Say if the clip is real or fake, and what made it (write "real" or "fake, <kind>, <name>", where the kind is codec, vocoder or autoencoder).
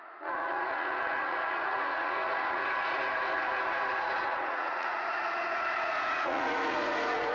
fake, vocoder, Vocos